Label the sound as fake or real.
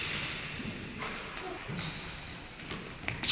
real